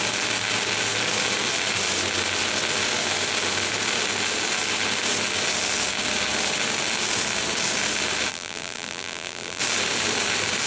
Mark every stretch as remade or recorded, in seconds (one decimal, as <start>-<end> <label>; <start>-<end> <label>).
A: 0.0-8.3 recorded; 8.3-9.6 remade; 9.6-10.7 recorded